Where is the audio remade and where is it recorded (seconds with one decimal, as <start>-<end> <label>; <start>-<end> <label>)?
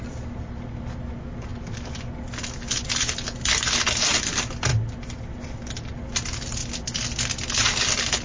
0.0-8.2 recorded